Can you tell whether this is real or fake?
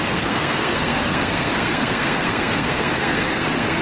fake